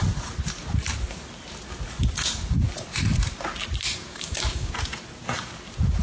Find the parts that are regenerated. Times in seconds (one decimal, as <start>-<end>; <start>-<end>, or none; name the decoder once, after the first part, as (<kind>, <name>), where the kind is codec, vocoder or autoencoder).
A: 4.1-4.7 (codec, DAC)